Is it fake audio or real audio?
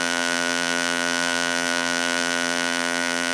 fake